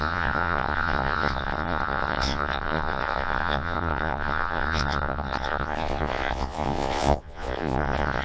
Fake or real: fake